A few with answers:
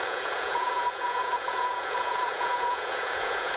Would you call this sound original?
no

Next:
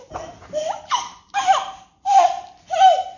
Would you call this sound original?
no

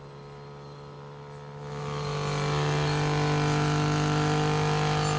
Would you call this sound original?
yes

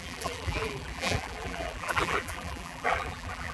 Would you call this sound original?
no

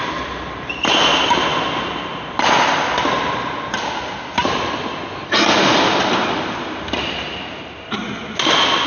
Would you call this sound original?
yes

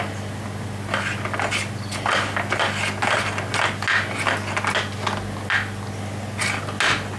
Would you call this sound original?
yes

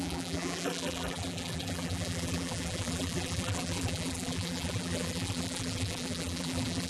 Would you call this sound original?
no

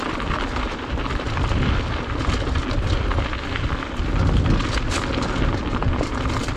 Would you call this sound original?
yes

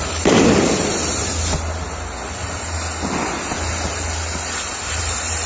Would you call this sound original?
yes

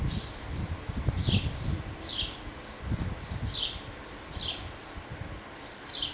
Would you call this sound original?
yes